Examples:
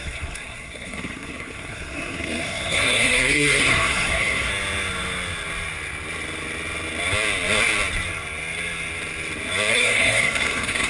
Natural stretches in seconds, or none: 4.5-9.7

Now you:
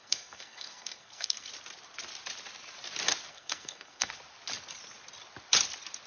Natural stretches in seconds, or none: 1.5-3.3; 4.1-6.1